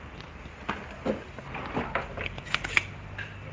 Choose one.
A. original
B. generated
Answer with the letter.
A